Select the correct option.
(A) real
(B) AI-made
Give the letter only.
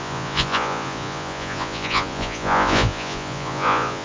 B